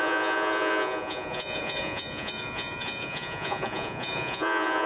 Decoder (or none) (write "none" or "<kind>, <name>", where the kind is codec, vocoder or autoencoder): vocoder, Vocos